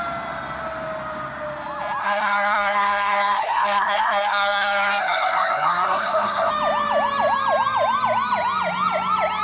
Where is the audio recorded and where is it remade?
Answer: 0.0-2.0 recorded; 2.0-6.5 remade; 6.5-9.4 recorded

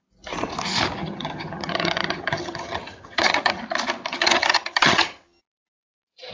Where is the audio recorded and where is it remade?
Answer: 0.0-1.0 recorded; 1.0-3.6 remade; 3.6-4.1 recorded; 4.1-5.4 remade; 5.4-6.3 recorded

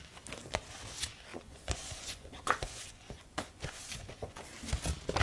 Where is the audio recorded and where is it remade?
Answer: 0.0-1.3 recorded; 1.3-4.4 remade; 4.4-5.2 recorded

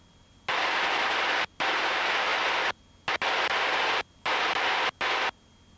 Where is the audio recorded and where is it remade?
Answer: 0.0-5.8 recorded

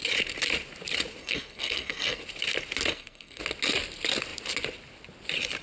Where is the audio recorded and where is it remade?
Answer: 0.0-1.2 recorded; 1.2-2.2 remade; 2.2-2.9 recorded; 2.9-3.4 remade; 3.4-5.6 recorded

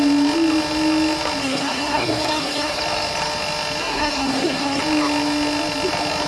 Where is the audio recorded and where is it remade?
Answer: 0.0-1.4 recorded; 1.4-2.8 remade; 2.8-3.8 recorded; 3.8-4.8 remade; 4.8-6.3 recorded